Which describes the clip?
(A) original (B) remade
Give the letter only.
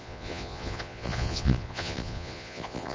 B